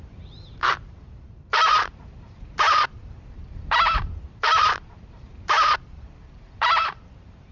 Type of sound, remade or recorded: remade